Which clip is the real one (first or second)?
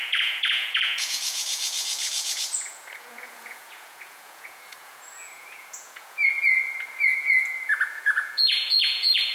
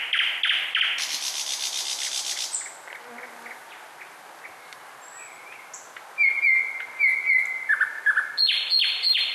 second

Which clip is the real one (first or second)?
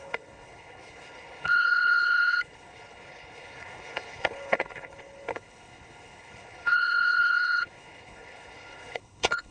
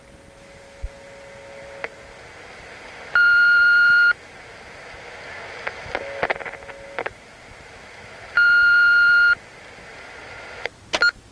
second